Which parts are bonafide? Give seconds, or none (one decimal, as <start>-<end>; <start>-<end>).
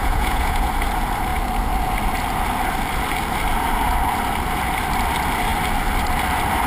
0.7-6.7